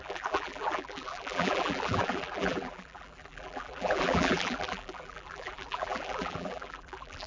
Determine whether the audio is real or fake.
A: fake